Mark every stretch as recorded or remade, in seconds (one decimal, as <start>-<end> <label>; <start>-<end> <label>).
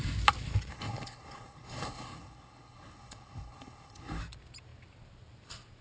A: 0.0-0.7 recorded; 0.7-4.2 remade; 4.2-5.8 recorded